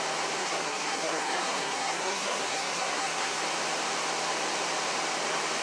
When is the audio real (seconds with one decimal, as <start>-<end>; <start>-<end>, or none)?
0.0-0.4; 3.4-5.6